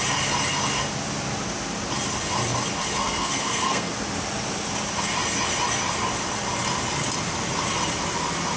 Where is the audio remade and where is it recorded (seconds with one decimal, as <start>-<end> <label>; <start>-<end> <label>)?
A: 0.0-3.0 recorded; 3.0-3.9 remade; 3.9-8.6 recorded